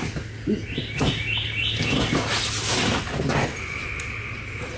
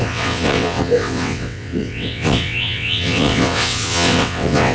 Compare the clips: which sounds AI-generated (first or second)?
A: second